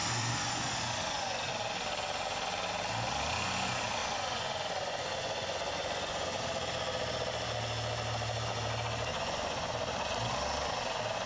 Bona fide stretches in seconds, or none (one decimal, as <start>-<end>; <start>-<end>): 1.5-4.0; 6.4-9.1; 9.7-11.3